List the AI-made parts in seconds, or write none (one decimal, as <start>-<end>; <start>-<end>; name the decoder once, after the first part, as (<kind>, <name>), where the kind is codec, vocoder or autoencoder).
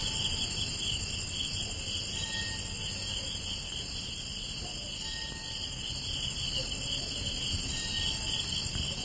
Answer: none